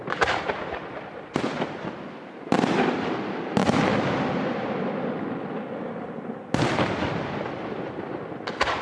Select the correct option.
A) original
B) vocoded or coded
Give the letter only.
A